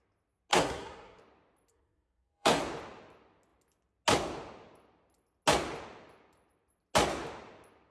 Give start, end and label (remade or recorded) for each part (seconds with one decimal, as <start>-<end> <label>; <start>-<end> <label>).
0.0-0.5 recorded; 0.5-1.2 remade; 1.2-1.7 recorded; 1.7-2.6 remade; 2.6-7.9 recorded